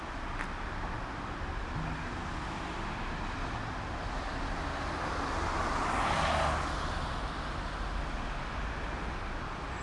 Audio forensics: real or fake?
real